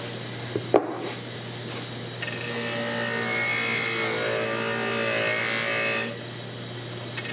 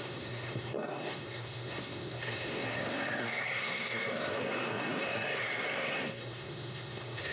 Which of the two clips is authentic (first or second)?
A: first